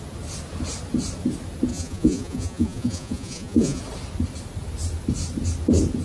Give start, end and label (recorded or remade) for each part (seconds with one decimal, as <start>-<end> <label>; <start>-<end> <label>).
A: 0.0-1.7 recorded; 1.7-3.8 remade; 3.8-6.0 recorded